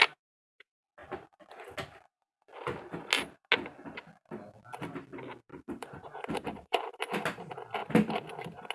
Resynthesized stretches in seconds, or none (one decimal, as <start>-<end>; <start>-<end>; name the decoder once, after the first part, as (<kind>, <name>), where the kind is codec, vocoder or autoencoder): 5.5-7.1 (vocoder, BigVGAN v2)